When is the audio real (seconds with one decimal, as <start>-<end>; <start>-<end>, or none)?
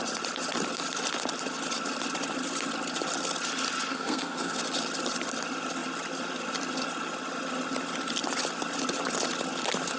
0.0-3.9; 4.6-10.0